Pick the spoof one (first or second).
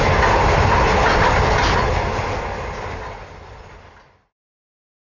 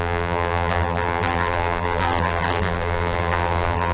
second